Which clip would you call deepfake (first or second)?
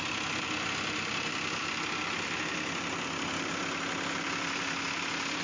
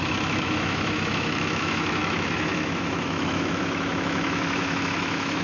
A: second